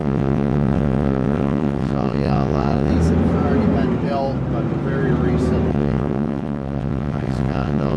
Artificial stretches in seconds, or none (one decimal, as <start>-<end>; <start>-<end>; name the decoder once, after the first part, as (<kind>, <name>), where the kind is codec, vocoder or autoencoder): 0.0-2.9 (vocoder, WaveNeXt); 5.7-8.0